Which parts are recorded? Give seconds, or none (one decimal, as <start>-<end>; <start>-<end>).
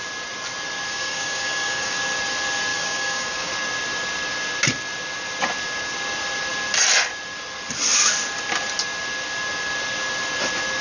0.0-0.9; 2.0-2.7; 3.5-10.8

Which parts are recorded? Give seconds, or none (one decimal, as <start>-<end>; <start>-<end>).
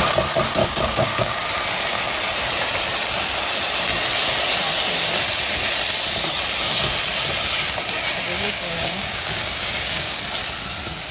0.0-0.6; 1.4-8.3; 10.2-11.1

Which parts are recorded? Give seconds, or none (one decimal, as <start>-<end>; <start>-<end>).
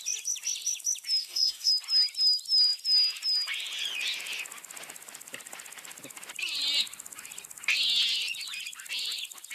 0.0-1.2; 1.7-9.5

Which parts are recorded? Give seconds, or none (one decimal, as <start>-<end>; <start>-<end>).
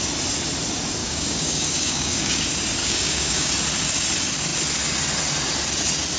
0.0-1.0; 2.4-2.8; 3.5-6.2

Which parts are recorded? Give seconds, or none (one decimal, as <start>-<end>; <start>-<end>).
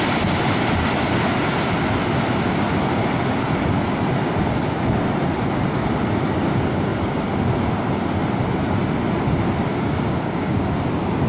0.0-9.7; 10.6-11.3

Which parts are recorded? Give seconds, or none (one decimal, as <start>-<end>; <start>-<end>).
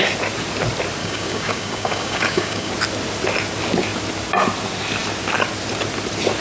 0.0-1.0; 2.7-6.4